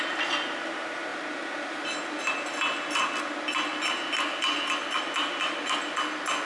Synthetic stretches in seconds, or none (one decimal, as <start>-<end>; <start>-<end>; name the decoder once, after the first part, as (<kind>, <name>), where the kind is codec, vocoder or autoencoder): none

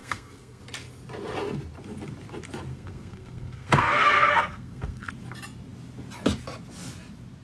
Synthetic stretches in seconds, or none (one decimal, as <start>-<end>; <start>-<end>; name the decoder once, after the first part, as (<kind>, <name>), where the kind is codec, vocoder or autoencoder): 0.0-0.6 (codec, SNAC); 2.7-5.1

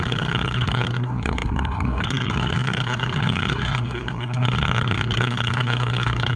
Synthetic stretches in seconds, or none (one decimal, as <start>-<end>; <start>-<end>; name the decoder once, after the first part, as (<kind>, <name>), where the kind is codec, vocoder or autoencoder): 0.0-6.4 (codec, SNAC)

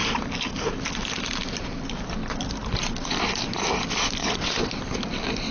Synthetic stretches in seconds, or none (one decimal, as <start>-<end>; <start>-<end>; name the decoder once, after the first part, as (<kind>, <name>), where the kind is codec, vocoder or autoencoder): 4.2-4.7 (vocoder, WaveNeXt)

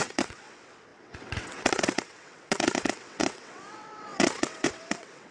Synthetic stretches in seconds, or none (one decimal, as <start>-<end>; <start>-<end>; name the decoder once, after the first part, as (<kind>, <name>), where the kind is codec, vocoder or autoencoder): 0.0-5.3 (vocoder, WaveNeXt)

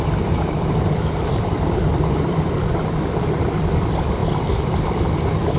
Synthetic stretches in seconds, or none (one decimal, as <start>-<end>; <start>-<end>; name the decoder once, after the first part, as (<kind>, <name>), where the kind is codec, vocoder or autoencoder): 0.0-4.2 (vocoder, BigVGAN v2); 4.9-5.6

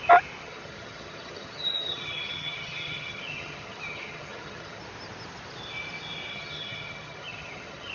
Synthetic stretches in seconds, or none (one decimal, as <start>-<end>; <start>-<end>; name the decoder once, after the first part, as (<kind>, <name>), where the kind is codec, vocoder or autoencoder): 0.4-4.8 (vocoder, HiFi-GAN); 6.3-7.9

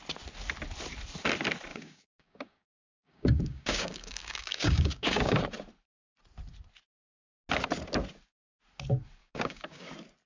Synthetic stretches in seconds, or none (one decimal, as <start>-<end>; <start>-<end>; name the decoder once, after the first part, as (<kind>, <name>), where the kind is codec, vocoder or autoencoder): 1.7-5.4 (codec, DAC); 9.2-9.9